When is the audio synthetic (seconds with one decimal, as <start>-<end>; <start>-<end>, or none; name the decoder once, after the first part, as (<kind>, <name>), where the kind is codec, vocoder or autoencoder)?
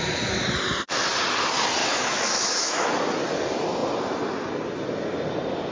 1.8-2.9 (autoencoder, DAC-VAE)